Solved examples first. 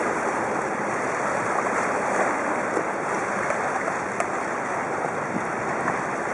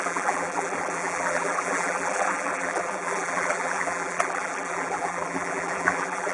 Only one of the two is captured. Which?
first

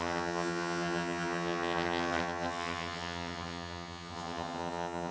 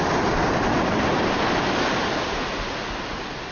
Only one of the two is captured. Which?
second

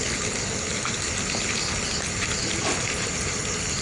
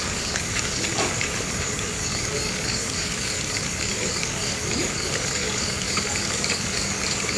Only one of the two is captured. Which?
first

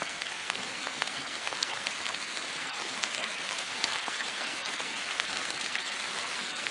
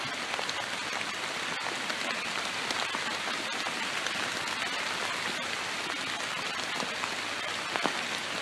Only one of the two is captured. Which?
second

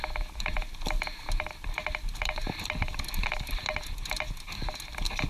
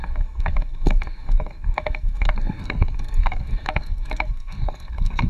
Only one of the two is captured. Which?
first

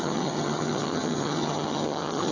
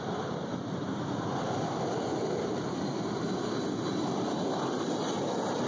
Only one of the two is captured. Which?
second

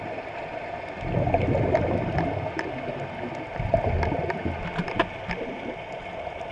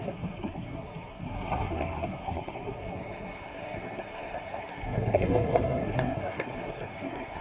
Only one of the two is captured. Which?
first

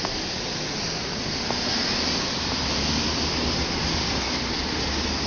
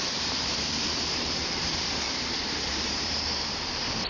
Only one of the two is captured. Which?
first